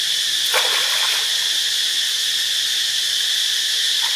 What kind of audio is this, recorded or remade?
recorded